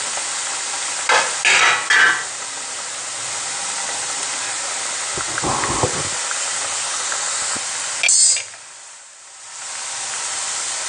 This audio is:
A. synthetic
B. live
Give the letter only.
B